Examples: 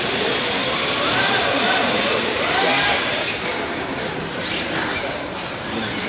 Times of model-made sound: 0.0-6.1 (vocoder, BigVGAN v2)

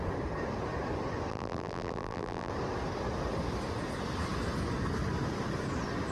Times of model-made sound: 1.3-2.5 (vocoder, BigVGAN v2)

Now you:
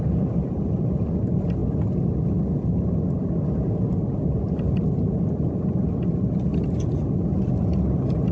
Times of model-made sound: 0.0-1.6 (vocoder, BigVGAN v2); 2.4-6.5; 7.3-8.3